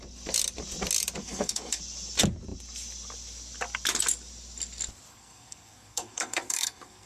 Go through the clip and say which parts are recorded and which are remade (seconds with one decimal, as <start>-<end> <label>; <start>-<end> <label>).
0.0-1.2 recorded; 1.2-1.8 remade; 1.8-5.1 recorded; 5.1-7.1 remade